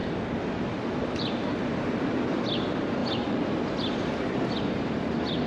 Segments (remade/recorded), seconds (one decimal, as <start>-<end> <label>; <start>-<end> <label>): 0.0-5.5 recorded